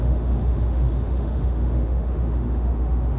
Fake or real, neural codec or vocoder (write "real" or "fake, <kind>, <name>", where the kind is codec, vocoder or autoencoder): fake, autoencoder, DAC-VAE